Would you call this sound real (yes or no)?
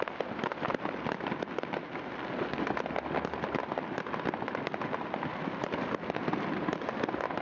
yes